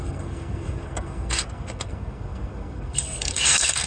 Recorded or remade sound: remade